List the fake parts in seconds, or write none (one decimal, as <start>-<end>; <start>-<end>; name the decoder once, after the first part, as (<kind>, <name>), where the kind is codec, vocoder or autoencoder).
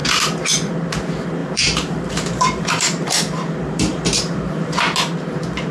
1.4-4.8 (vocoder, BigVGAN v2)